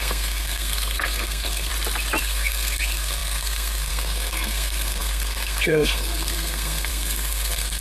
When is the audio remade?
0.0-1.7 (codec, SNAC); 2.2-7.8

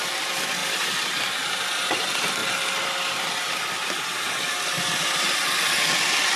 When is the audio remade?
none

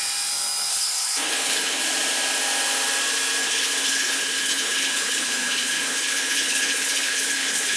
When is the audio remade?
0.7-1.8 (codec, HILCodec); 3.4-7.8

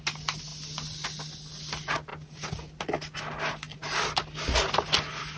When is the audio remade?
none

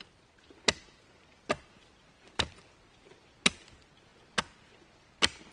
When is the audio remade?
1.8-2.8 (vocoder, BigVGAN v2)

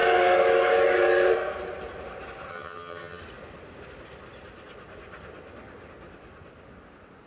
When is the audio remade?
2.5-3.2 (vocoder, HiFi-GAN)